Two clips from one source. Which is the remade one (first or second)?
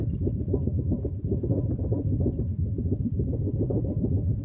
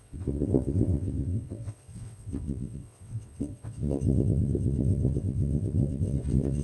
second